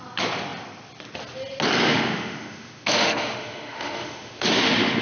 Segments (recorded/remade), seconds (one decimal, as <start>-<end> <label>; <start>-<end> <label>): 0.0-1.9 recorded; 1.9-5.0 remade